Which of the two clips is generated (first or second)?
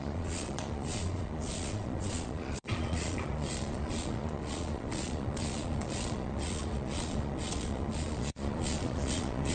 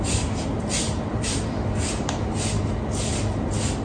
first